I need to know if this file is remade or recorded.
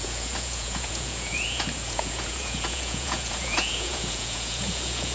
remade